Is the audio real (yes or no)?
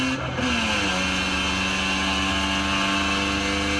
yes